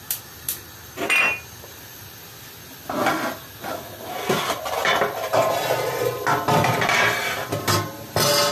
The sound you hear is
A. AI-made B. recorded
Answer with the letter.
B